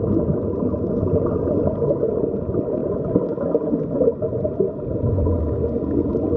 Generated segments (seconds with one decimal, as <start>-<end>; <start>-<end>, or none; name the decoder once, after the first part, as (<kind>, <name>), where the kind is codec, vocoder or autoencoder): none